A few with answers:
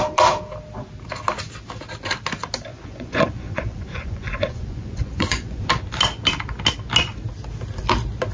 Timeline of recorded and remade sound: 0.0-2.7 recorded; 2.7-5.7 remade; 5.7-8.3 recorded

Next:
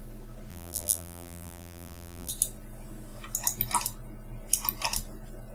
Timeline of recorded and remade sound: 0.0-0.5 recorded; 0.5-2.3 remade; 2.3-5.5 recorded

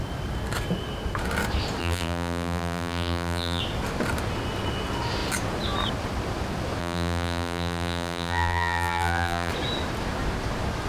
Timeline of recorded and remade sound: 0.0-1.8 recorded; 1.8-3.6 remade; 3.6-6.8 recorded; 6.8-9.5 remade; 9.5-10.9 recorded

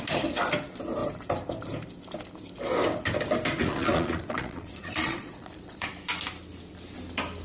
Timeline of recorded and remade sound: 0.0-3.6 recorded; 3.6-5.9 remade; 5.9-7.4 recorded

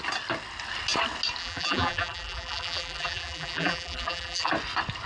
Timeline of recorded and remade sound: 0.0-1.4 recorded; 1.4-4.5 remade; 4.5-5.1 recorded

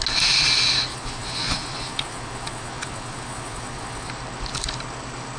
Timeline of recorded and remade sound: 0.0-0.9 recorded; 0.9-4.1 remade; 4.1-5.4 recorded